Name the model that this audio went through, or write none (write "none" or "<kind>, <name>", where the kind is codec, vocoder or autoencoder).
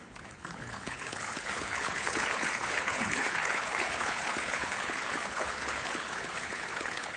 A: codec, HILCodec